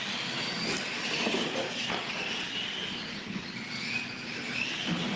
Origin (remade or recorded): recorded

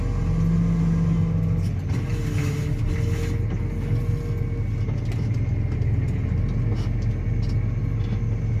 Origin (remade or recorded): recorded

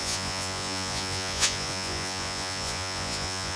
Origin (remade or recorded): remade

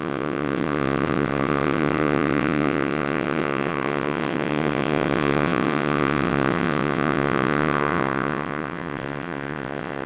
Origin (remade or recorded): remade